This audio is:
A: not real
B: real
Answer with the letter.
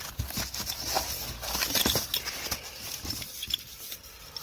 B